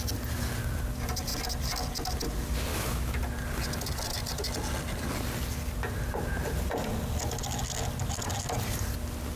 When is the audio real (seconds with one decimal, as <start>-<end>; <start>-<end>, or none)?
0.0-2.7; 3.2-9.4